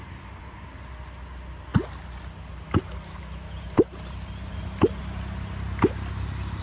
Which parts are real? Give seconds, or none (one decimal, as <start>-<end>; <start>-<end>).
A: 0.0-6.6